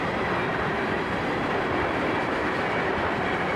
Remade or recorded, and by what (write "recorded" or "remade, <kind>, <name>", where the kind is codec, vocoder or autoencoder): recorded